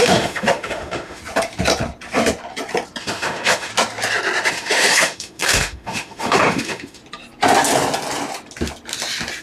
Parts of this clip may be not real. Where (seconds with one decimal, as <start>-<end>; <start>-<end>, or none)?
0.0-1.2; 3.0-3.7; 4.5-7.0